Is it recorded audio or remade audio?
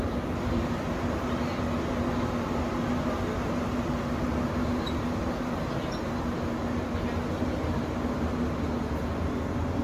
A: recorded